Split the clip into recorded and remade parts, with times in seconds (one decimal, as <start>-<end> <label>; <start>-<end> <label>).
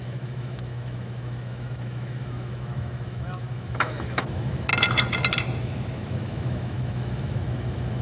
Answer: 0.0-4.7 remade; 4.7-5.6 recorded; 5.6-8.0 remade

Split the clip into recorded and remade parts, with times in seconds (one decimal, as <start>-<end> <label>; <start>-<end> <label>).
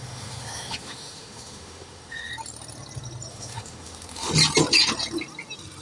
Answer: 0.0-2.3 remade; 2.3-3.3 recorded; 3.3-4.3 remade; 4.3-5.8 recorded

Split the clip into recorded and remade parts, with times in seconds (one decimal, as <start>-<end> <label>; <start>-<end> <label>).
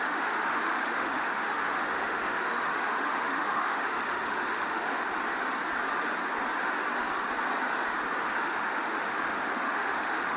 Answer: 0.0-5.0 remade; 5.0-8.2 recorded; 8.2-10.4 remade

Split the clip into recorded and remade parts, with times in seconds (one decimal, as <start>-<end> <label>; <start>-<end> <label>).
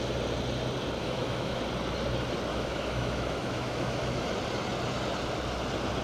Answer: 0.0-1.0 recorded; 1.0-1.6 remade; 1.6-2.5 recorded; 2.5-4.3 remade; 4.3-6.0 recorded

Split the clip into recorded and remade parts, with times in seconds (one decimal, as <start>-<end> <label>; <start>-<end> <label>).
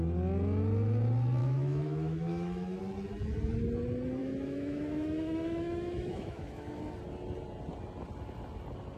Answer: 0.0-1.4 recorded; 1.4-2.8 remade; 2.8-4.2 recorded; 4.2-6.8 remade; 6.8-9.0 recorded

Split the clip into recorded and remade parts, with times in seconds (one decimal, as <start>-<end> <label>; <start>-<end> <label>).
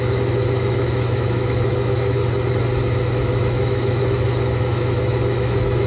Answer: 0.0-2.2 remade; 2.2-3.2 recorded; 3.2-5.9 remade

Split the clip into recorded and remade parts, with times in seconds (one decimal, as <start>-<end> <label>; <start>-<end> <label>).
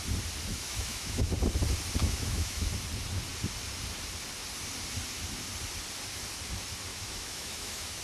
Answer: 0.0-0.5 recorded; 0.5-1.3 remade; 1.3-2.0 recorded; 2.0-2.7 remade; 2.7-6.9 recorded; 6.9-8.0 remade